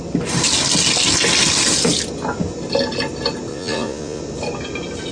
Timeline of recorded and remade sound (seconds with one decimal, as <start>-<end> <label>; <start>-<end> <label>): 0.0-3.5 recorded; 3.5-4.2 remade; 4.2-5.1 recorded